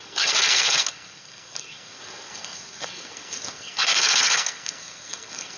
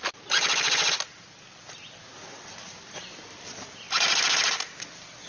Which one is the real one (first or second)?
second